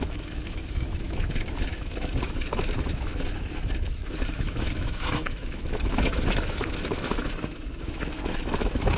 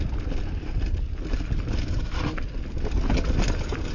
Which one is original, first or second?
second